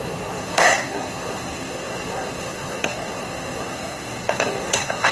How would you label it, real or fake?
fake